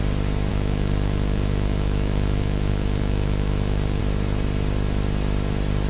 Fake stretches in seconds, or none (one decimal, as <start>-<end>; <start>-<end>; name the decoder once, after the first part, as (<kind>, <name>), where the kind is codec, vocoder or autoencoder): 0.5-4.0 (autoencoder, DAC-VAE)